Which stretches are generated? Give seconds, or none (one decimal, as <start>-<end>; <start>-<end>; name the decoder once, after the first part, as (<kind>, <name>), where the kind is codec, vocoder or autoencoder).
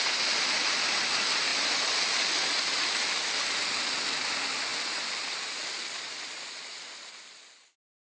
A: 1.5-2.2 (vocoder, BigVGAN v2); 4.7-6.9